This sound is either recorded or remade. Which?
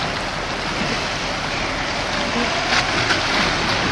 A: recorded